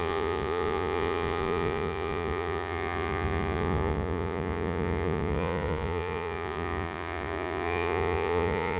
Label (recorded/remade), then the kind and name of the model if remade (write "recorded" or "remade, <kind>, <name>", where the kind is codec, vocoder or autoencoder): remade, vocoder, Vocos